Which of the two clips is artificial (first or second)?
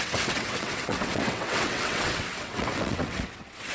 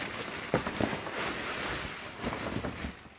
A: first